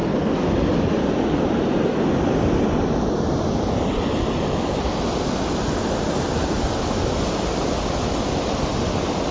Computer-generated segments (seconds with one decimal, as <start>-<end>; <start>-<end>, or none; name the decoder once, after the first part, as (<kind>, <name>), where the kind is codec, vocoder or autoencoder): none